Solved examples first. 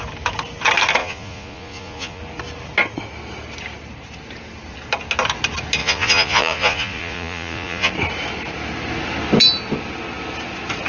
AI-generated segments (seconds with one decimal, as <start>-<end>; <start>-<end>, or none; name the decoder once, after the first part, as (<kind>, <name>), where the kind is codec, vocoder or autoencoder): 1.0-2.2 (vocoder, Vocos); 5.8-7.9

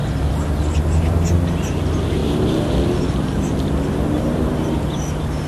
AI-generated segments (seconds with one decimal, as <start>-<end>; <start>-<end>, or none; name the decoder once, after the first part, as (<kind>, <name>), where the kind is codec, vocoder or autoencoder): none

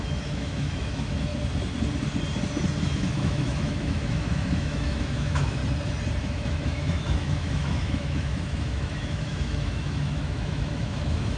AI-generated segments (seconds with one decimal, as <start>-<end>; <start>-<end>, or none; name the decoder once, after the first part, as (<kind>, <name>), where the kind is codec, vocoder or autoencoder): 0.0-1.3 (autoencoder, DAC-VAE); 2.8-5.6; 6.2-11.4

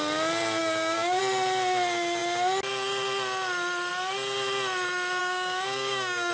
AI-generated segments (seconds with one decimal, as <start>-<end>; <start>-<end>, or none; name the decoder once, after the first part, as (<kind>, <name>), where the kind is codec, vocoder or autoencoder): 0.6-1.2 (codec, DAC); 5.2-6.3

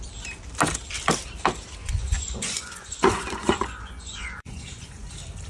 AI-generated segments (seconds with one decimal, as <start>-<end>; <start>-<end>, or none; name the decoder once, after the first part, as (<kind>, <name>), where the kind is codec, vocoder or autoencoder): 1.8-5.1 (vocoder, Vocos)

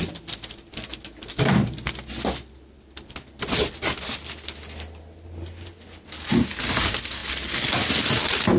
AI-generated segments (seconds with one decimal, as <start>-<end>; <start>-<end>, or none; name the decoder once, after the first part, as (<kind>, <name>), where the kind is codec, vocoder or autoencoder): none